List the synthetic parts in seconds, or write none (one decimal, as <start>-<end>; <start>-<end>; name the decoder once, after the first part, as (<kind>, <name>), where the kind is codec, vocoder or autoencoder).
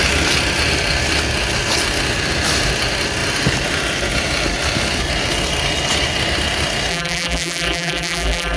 6.9-8.6 (vocoder, BigVGAN v2)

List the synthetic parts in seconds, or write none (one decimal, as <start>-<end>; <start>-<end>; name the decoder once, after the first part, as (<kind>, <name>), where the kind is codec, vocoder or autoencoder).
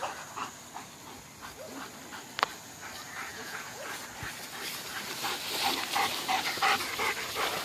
3.3-4.0 (vocoder, Vocos)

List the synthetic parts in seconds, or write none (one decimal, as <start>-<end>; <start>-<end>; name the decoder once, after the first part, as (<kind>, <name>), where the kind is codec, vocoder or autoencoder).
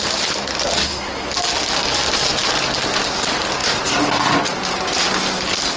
3.6-5.0 (vocoder, BigVGAN v2)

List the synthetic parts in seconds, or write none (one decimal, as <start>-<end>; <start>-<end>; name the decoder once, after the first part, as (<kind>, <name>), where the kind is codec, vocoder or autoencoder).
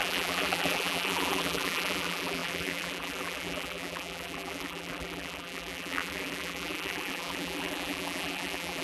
0.0-8.8 (vocoder, BigVGAN v2)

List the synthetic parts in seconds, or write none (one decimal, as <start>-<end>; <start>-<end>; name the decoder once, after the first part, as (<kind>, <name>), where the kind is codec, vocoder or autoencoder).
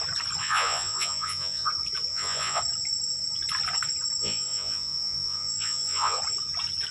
0.4-1.7 (vocoder, Vocos); 2.1-2.6; 4.2-6.2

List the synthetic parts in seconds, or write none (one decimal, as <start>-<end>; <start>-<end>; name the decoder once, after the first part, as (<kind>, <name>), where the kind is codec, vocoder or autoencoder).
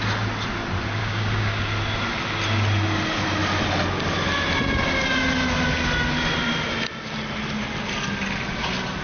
1.0-1.6 (codec, DAC)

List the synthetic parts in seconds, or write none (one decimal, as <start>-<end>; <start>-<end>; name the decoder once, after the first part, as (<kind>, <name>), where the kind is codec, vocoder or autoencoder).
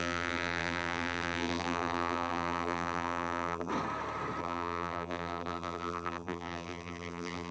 0.0-3.7 (vocoder, BigVGAN v2); 4.4-7.5